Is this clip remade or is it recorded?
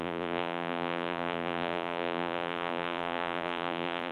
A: remade